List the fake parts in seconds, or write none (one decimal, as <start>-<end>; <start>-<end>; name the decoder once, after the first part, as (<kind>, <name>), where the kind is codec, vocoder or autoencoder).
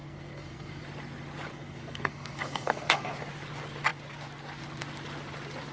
0.0-0.8 (codec, SNAC); 1.5-3.1